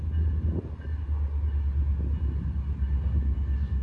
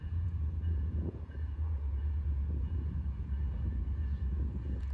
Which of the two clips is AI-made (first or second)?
second